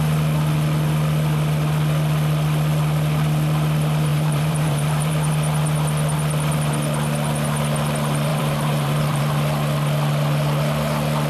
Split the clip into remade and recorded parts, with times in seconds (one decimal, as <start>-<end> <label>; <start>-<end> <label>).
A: 0.0-4.1 recorded; 4.1-5.3 remade; 5.3-8.3 recorded; 8.3-9.2 remade; 9.2-11.3 recorded